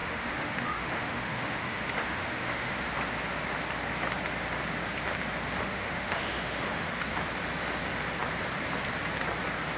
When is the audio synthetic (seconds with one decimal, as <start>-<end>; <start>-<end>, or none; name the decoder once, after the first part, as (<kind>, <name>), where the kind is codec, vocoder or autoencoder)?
0.0-2.9 (autoencoder, DAC-VAE); 5.7-6.9